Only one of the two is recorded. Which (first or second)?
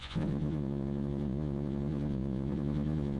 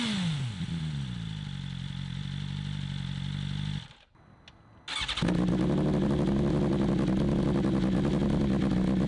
second